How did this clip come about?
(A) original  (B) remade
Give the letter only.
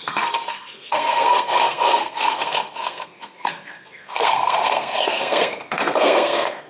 B